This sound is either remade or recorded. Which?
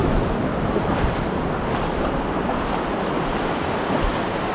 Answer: recorded